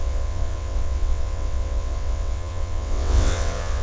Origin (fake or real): fake